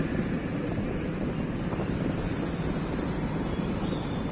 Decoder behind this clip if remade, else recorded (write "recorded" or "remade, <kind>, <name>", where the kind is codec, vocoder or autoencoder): recorded